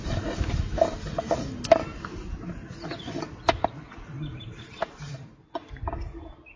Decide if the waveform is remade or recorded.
recorded